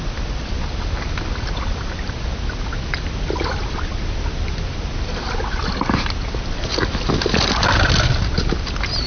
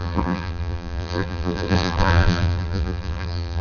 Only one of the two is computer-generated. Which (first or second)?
second